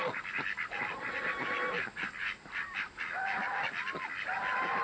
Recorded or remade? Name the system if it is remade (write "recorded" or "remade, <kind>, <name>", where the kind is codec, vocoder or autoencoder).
recorded